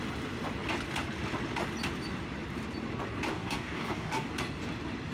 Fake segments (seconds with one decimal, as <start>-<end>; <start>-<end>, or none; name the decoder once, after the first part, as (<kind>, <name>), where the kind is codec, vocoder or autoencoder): 3.3-4.3 (codec, DAC)